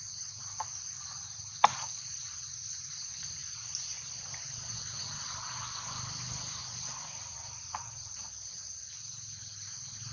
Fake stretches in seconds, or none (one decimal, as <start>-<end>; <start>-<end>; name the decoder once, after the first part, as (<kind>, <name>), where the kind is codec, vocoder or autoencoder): 0.0-10.1 (vocoder, BigVGAN v2)